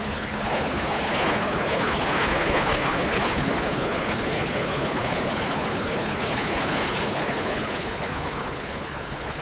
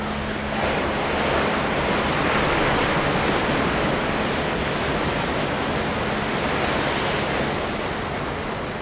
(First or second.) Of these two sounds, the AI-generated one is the first